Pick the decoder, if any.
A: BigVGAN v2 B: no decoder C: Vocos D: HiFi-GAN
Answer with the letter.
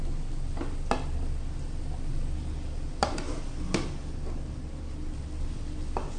B